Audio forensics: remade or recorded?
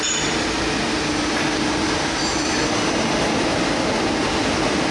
recorded